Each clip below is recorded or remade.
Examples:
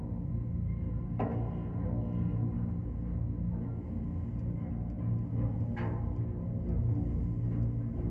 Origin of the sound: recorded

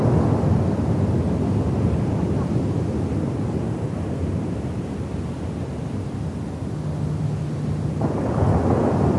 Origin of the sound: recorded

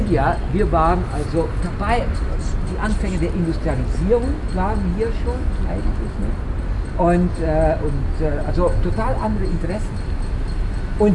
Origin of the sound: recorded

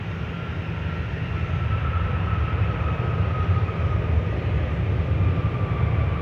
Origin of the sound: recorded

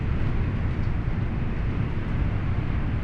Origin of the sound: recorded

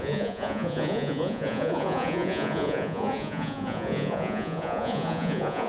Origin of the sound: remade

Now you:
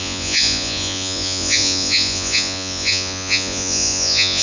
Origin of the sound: remade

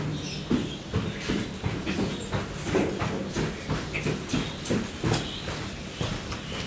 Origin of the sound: recorded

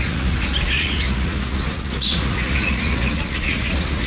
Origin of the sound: remade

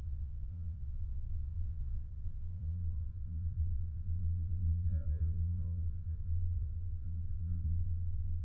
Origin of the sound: remade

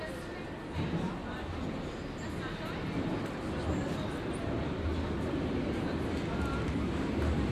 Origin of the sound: recorded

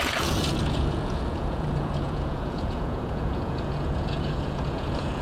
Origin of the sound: remade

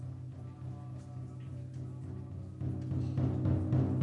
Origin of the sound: recorded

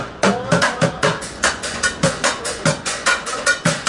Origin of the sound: remade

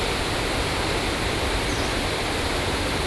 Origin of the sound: recorded